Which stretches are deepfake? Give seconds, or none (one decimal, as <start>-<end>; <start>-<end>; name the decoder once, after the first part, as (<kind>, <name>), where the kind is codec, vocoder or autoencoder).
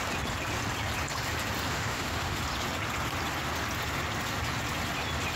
1.7-2.4 (autoencoder, DAC-VAE)